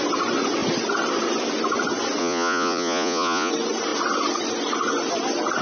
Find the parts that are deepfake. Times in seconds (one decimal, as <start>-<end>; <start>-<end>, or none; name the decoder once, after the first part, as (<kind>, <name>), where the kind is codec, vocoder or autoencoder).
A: 2.2-3.5 (vocoder, Vocos)

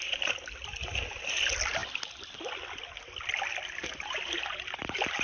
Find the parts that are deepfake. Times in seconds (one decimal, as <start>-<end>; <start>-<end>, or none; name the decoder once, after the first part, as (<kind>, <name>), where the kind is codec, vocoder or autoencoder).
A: none

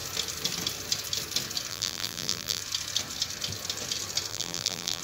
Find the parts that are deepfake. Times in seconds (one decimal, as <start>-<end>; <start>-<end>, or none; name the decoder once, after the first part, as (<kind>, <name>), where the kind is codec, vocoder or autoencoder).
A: 1.7-2.6 (vocoder, BigVGAN v2); 4.3-5.0

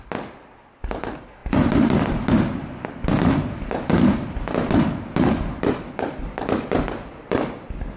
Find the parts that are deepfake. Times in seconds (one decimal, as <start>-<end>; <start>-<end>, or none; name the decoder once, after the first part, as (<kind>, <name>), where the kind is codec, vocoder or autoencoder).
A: none

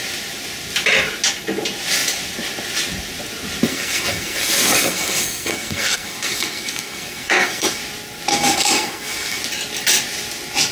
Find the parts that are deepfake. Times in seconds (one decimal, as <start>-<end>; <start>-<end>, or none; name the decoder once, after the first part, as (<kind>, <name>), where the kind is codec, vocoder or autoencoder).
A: 3.7-7.8 (codec, SNAC); 8.3-9.4

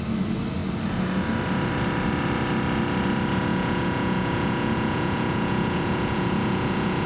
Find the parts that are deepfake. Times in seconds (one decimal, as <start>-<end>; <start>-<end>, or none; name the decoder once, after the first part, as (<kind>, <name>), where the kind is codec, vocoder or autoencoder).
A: 3.5-7.1 (vocoder, Vocos)

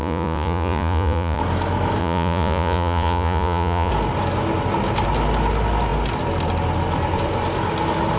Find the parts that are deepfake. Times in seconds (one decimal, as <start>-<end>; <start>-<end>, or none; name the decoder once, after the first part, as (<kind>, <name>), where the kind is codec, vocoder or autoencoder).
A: 0.0-1.4 (vocoder, Vocos); 2.0-3.9

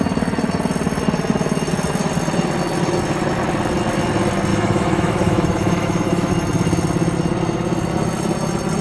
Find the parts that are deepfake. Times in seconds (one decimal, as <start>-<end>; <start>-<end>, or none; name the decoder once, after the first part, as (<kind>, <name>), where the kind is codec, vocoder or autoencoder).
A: 4.5-6.3 (autoencoder, DAC-VAE)